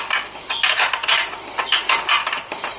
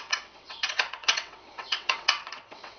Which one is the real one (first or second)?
first